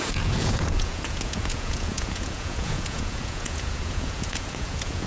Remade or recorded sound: remade